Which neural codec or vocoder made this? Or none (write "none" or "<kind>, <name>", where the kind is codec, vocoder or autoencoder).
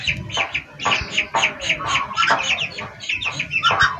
none